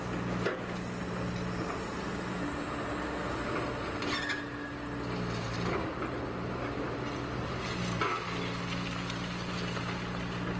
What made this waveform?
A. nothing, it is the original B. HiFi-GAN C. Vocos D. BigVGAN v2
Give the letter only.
A